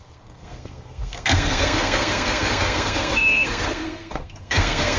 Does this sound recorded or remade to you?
remade